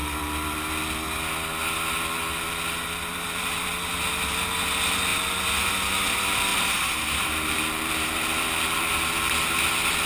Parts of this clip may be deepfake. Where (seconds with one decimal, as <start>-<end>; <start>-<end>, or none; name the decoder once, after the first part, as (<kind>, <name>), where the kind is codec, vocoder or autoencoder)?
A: 3.1-3.7 (vocoder, BigVGAN v2); 6.5-8.9